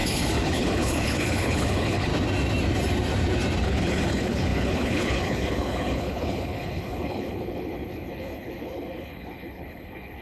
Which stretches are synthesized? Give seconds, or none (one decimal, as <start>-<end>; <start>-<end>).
0.0-2.1; 3.6-10.2